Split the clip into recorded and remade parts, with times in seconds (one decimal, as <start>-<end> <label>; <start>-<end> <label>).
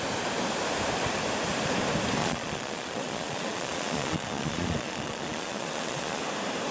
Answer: 0.0-2.2 recorded; 2.2-6.2 remade; 6.2-6.7 recorded